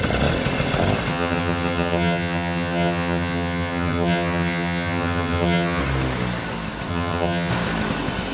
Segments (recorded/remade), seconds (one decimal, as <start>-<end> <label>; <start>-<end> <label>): 0.0-1.1 recorded; 1.1-5.8 remade; 5.8-6.9 recorded; 6.9-7.5 remade; 7.5-8.3 recorded